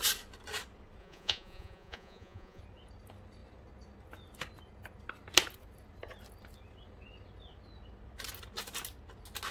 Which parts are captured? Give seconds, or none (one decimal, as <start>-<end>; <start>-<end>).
0.0-1.0; 2.6-9.5